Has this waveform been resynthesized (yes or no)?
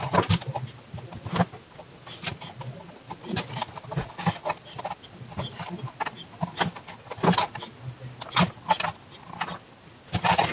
no